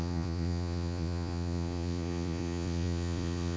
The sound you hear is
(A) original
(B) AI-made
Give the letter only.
B